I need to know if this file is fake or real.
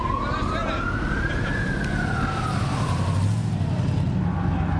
real